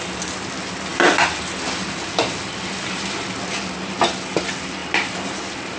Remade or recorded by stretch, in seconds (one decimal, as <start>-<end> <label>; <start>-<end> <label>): 0.0-5.8 recorded